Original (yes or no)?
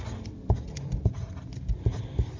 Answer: yes